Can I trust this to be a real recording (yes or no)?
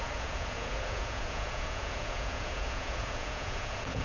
no